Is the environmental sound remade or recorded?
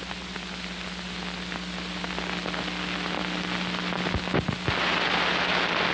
recorded